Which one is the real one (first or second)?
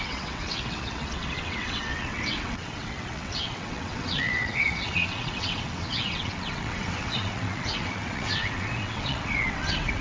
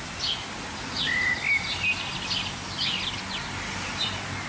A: second